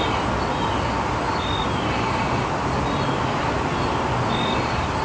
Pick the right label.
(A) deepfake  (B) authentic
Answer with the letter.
B